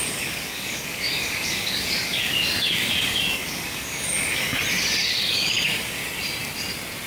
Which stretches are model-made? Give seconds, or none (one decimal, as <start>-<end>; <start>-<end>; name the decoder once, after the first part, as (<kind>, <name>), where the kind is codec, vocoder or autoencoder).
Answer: 0.0-4.5 (codec, DAC); 5.3-6.0